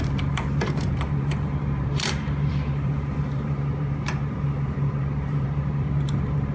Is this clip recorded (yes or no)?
no